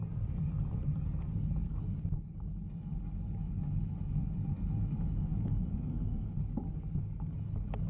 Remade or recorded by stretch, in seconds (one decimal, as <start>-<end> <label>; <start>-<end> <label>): 0.0-7.9 recorded